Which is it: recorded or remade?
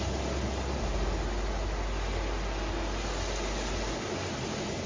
recorded